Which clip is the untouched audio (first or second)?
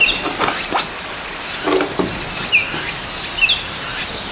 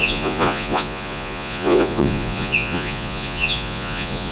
first